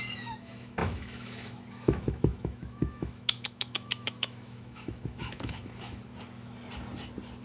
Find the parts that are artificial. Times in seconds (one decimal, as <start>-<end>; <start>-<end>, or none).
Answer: 0.0-6.0